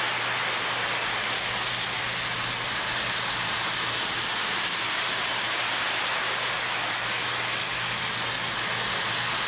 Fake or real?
real